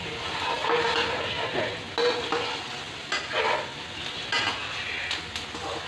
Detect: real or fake real